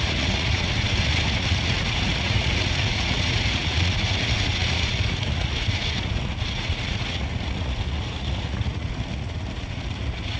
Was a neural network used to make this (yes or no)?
yes